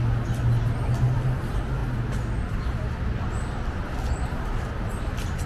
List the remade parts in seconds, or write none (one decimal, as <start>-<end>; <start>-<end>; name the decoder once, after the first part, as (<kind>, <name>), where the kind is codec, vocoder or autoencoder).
none